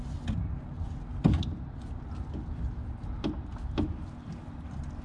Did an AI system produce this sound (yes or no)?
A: no